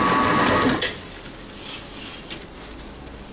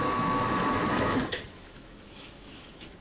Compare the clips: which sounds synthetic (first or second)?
second